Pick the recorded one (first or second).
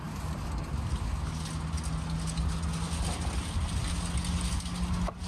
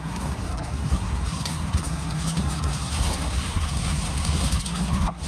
first